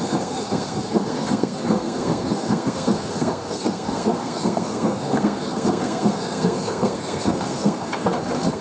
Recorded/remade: remade